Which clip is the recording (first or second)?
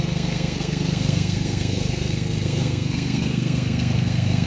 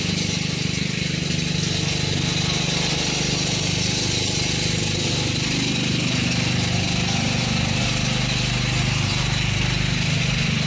second